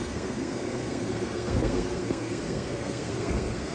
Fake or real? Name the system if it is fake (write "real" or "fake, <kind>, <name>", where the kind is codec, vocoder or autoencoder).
fake, codec, SNAC